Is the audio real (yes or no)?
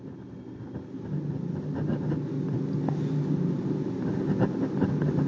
yes